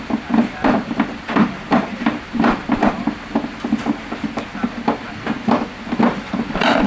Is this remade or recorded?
remade